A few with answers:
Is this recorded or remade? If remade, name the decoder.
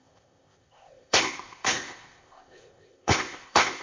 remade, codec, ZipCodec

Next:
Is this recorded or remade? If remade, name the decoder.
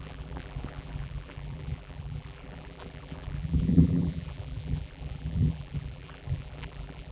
remade, vocoder, BigVGAN v2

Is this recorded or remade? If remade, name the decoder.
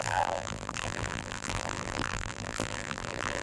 remade, vocoder, BigVGAN v2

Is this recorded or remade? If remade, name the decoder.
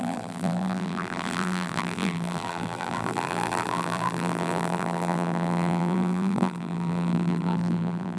remade, vocoder, BigVGAN v2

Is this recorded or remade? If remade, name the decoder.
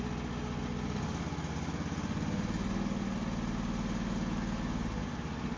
recorded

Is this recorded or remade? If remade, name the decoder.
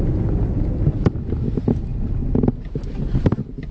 recorded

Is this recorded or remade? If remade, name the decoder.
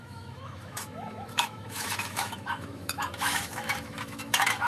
remade, autoencoder, DAC-VAE